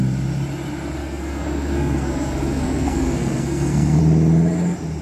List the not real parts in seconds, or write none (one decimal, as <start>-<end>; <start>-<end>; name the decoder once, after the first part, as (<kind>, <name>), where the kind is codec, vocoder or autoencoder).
1.0-4.0 (codec, SNAC)